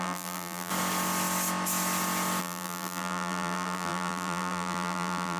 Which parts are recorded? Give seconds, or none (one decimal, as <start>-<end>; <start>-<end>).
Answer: 0.7-2.4